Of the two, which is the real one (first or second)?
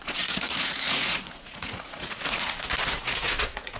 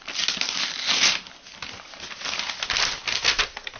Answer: second